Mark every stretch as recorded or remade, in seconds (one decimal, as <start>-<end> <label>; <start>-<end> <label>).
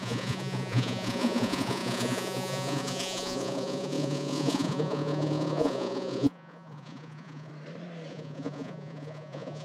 0.0-7.5 remade; 7.5-8.1 recorded; 8.1-9.6 remade